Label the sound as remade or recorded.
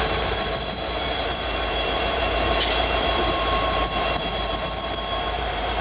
remade